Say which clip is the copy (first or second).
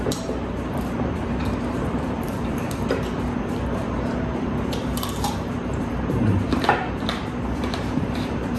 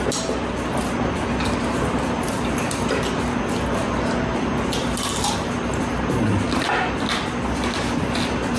first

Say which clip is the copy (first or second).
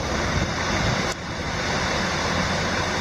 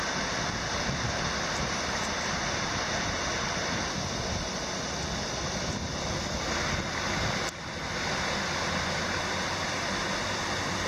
first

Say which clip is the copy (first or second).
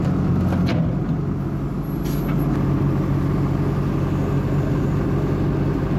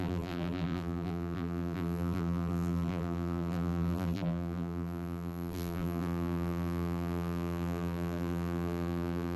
second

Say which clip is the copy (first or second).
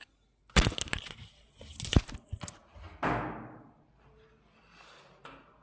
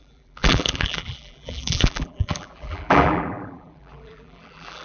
second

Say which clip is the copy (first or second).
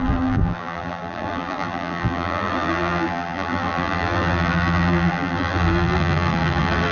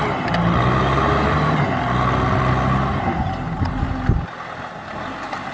first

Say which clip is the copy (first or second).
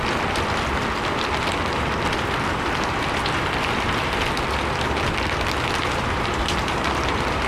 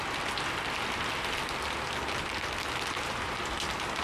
first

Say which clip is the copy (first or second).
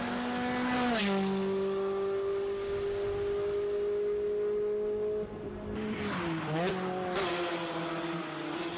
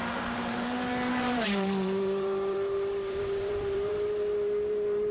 second